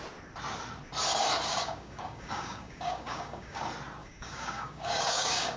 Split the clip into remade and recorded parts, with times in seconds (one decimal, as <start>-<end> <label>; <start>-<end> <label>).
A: 0.0-1.5 recorded; 1.5-3.6 remade; 3.6-4.0 recorded; 4.0-5.6 remade